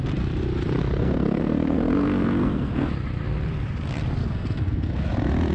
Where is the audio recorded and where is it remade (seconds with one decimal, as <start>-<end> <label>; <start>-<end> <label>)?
0.0-0.8 recorded; 0.8-2.9 remade; 2.9-4.2 recorded; 4.2-5.1 remade; 5.1-5.5 recorded